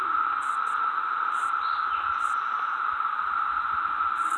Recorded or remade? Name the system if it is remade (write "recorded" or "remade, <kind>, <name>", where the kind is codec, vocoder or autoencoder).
recorded